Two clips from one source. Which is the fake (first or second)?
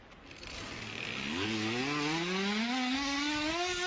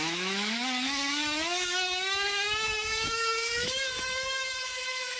second